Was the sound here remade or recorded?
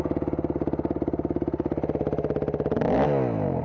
recorded